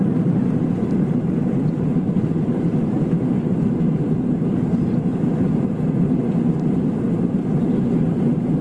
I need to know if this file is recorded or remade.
remade